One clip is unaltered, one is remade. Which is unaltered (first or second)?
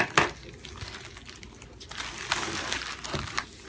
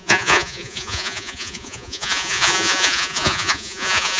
first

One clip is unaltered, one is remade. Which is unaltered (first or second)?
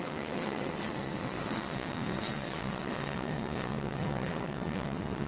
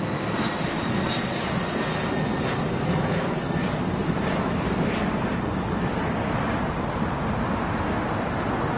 second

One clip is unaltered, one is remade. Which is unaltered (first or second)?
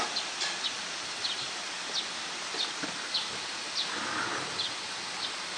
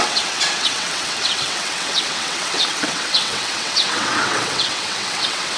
first